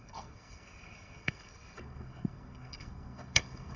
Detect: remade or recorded remade